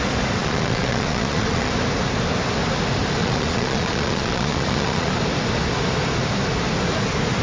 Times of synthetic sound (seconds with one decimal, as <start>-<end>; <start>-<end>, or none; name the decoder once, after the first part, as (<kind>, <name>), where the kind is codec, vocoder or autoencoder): 0.4-1.7 (vocoder, Vocos); 3.2-5.1